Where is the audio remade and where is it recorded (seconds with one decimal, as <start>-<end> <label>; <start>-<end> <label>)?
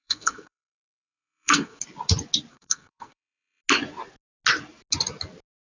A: 0.0-1.8 remade; 1.8-2.5 recorded; 2.5-3.6 remade; 3.6-5.7 recorded